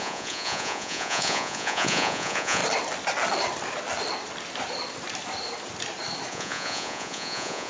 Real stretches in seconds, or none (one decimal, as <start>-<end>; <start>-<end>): 2.6-6.3